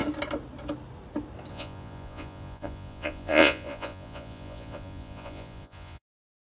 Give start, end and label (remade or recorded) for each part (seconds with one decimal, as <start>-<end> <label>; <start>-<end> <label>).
0.0-1.5 recorded; 1.5-6.6 remade